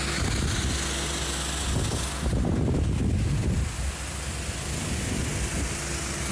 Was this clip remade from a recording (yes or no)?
no